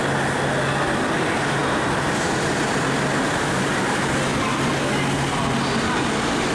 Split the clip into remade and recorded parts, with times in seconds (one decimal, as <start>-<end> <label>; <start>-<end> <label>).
0.0-1.6 recorded; 1.6-3.7 remade; 3.7-6.5 recorded